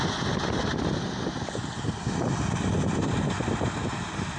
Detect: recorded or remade recorded